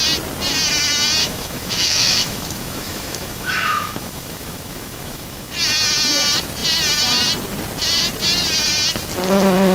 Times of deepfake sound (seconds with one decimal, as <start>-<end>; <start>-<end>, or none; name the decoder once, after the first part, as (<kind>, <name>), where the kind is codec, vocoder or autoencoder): 1.2-5.5 (autoencoder, DAC-VAE)

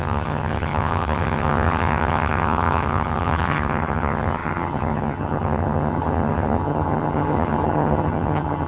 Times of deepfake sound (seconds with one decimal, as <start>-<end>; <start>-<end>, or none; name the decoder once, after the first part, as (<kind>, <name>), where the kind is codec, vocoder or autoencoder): 0.0-8.7 (vocoder, HiFi-GAN)

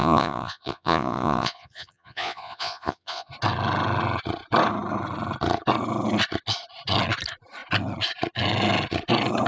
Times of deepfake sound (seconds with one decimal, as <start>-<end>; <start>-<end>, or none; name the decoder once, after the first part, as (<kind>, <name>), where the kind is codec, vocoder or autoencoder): 0.0-3.3 (vocoder, Vocos)

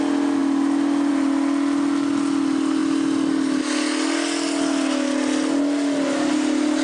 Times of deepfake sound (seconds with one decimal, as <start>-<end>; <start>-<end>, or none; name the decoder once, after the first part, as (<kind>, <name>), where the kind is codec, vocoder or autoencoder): none

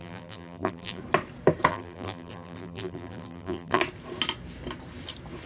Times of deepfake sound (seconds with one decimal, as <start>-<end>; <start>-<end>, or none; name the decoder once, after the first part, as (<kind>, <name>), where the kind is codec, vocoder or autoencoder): 0.0-1.0 (vocoder, BigVGAN v2); 1.7-3.8

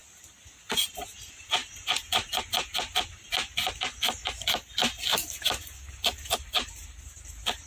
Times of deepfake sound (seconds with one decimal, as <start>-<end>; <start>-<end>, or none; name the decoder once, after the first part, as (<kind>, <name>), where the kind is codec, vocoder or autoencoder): none

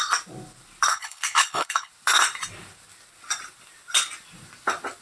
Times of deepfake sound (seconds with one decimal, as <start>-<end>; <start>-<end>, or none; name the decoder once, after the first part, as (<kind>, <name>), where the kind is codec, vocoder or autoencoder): 0.9-1.9 (codec, HILCodec)